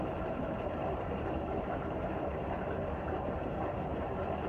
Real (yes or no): no